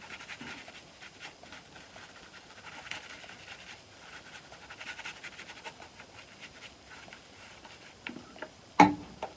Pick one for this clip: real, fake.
real